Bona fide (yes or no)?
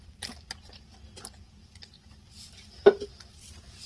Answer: no